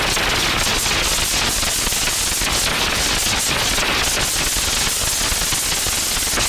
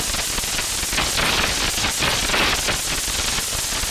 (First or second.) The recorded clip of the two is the first